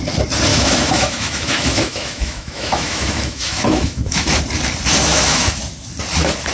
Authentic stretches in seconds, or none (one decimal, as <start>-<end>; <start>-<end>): 0.0-0.5; 4.4-5.1; 5.6-6.5